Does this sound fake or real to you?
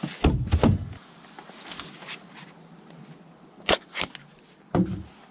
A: real